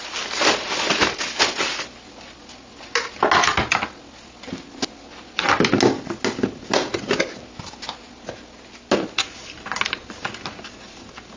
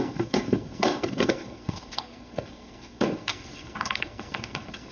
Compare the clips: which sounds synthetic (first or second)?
second